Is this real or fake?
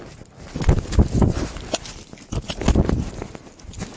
real